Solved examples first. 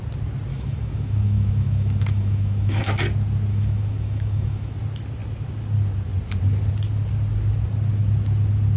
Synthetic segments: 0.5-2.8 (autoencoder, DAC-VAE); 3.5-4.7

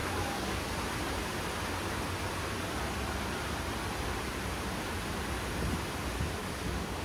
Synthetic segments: 0.0-0.7 (codec, DAC); 6.4-7.0

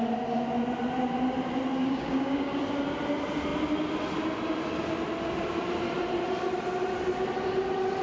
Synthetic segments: 1.8-2.6 (codec, DAC)

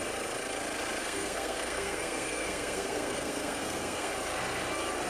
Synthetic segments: 1.0-4.1 (codec, SNAC)

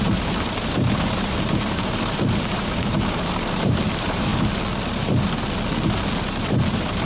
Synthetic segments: 0.0-4.3 (vocoder, BigVGAN v2); 6.1-7.1

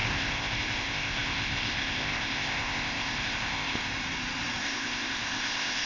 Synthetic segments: 0.0-3.9 (codec, ZipCodec); 4.6-5.9